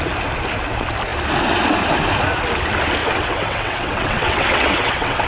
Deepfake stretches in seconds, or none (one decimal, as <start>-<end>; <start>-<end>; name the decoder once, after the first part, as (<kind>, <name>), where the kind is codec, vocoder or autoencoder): 3.0-5.3 (vocoder, WaveNeXt)